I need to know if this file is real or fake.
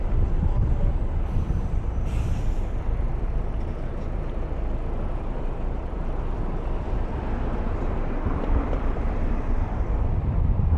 fake